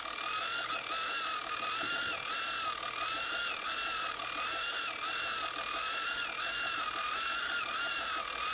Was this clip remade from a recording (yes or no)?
no